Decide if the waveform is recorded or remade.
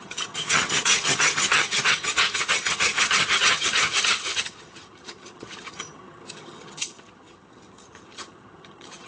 remade